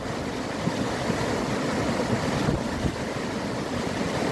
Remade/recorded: recorded